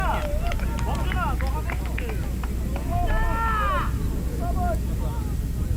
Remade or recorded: recorded